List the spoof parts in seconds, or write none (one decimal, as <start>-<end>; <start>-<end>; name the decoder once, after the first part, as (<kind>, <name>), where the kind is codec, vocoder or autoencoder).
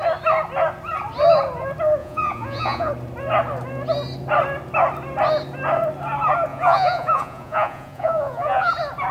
2.0-2.9 (vocoder, Vocos); 6.5-8.7